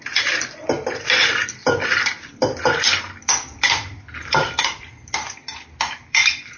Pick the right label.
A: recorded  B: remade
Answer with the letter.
B